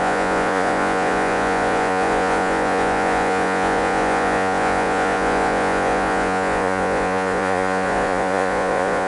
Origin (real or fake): fake